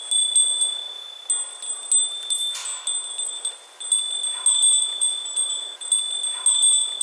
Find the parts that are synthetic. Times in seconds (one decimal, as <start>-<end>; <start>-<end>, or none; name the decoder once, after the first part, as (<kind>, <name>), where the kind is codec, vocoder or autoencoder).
0.4-1.1 (vocoder, Vocos); 4.8-5.9